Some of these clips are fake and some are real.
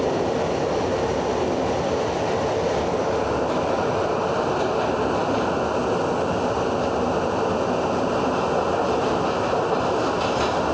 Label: real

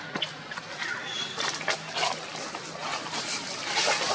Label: fake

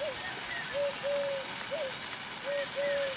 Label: real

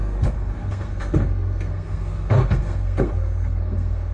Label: fake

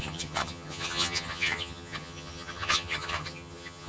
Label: fake